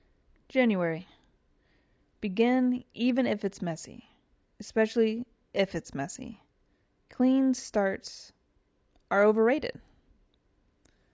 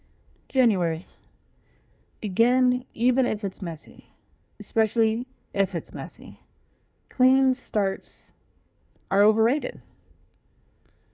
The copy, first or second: second